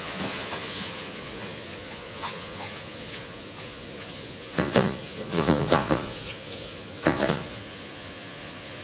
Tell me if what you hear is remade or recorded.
remade